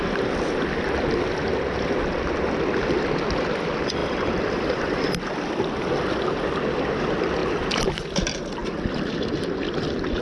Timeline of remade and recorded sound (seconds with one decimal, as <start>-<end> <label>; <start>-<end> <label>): 0.0-4.0 recorded; 4.0-5.5 remade; 5.5-8.6 recorded; 8.6-10.2 remade